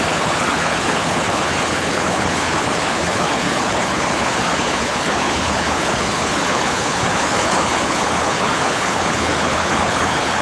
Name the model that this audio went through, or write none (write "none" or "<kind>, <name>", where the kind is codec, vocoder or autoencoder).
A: codec, HILCodec